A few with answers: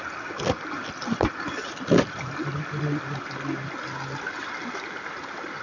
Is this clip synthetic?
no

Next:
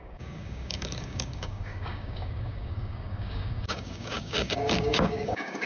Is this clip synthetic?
yes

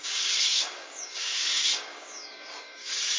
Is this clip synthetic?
yes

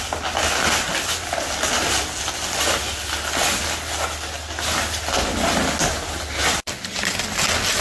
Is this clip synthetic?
no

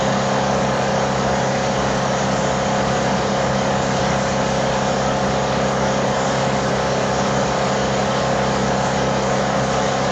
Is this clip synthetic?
yes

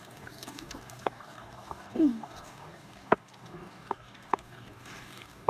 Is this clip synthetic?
yes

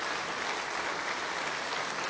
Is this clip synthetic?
no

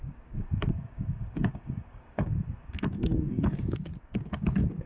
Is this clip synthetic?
yes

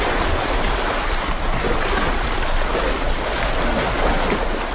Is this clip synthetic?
no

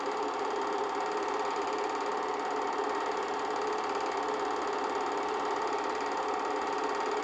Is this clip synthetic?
no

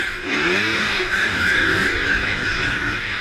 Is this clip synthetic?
yes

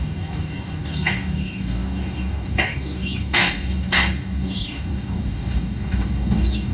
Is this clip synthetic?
yes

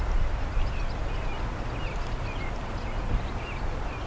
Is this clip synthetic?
no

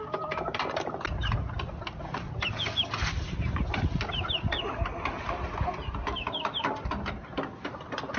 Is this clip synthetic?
no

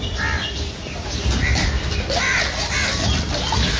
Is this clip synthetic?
no